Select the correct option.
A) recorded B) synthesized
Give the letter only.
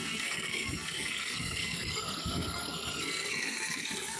B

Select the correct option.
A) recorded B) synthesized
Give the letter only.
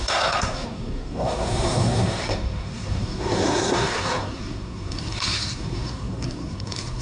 B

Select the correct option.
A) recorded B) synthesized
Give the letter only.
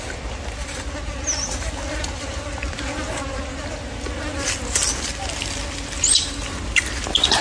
A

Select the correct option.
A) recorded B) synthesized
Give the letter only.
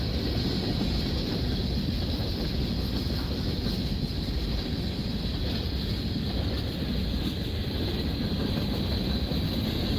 A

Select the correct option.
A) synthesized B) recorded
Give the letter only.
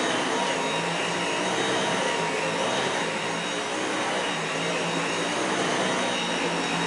B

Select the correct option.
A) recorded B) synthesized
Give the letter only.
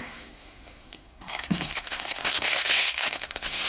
B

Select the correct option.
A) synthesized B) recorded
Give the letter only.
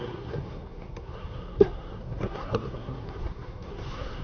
A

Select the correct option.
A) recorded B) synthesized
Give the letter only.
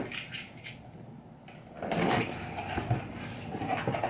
A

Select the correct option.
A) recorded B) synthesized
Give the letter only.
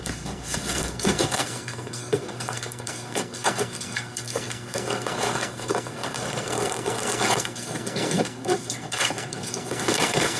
B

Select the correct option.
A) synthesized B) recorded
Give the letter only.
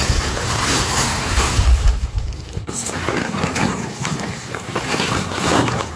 A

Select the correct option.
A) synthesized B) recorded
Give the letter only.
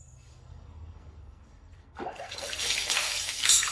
A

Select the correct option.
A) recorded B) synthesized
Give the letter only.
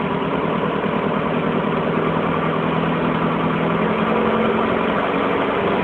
A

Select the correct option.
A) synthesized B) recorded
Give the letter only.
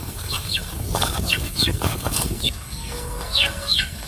A